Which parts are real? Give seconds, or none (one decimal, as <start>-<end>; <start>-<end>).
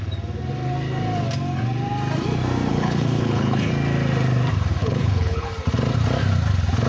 0.0-2.7; 3.7-4.8; 5.5-6.9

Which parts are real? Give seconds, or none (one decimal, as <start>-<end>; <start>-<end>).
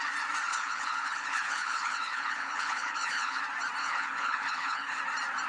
0.0-0.5; 3.4-3.8; 5.0-5.5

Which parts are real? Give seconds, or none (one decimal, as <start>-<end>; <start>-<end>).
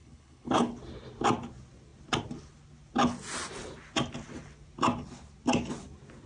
0.7-6.3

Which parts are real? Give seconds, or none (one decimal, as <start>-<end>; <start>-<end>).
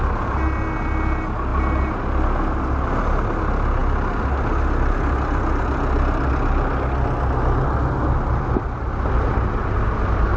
0.0-10.4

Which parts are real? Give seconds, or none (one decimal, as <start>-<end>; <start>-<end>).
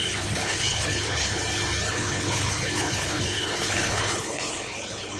1.4-1.9